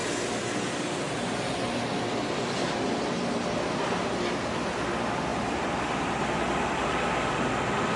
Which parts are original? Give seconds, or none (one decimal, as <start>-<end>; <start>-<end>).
0.0-8.0